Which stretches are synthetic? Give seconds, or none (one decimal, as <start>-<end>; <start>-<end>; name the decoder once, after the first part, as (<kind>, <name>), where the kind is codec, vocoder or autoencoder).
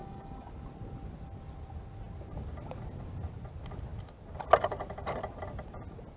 0.0-0.5 (codec, DAC)